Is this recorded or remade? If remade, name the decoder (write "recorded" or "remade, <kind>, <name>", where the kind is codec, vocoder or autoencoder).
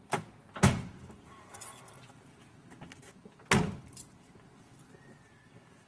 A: recorded